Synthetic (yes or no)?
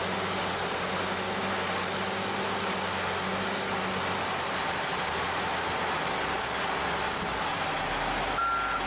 no